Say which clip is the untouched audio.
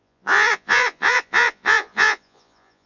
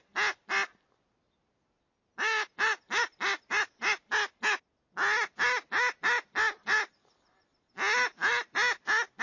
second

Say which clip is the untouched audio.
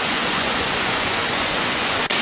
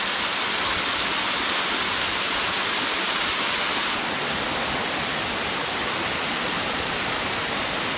second